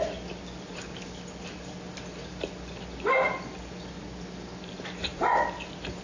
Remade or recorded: recorded